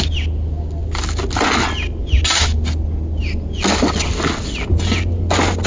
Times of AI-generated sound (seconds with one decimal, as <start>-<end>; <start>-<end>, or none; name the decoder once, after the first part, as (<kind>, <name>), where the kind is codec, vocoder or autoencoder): none